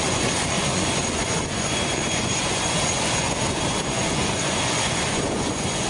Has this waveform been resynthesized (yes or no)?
yes